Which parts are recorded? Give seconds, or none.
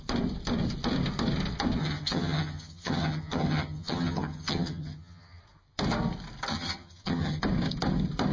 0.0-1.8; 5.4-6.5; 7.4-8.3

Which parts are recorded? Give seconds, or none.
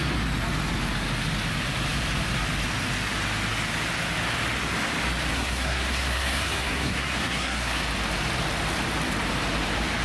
0.0-5.3; 7.8-10.0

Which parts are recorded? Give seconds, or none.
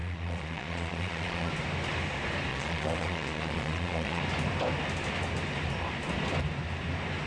1.5-2.5; 4.2-7.3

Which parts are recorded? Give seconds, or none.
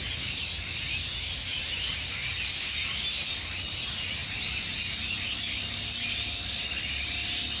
0.0-7.6